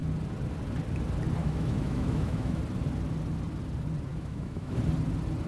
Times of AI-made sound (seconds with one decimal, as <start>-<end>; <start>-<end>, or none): 1.4-2.6; 4.1-4.8